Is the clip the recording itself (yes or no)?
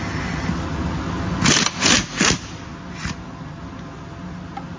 yes